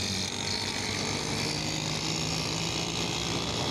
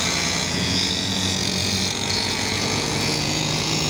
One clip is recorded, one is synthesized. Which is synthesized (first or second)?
second